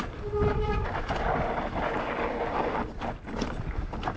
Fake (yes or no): no